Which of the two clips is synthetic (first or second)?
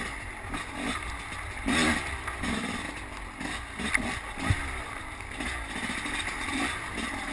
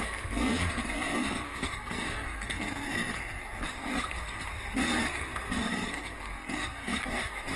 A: second